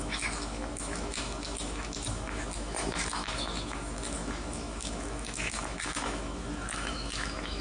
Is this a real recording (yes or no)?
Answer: no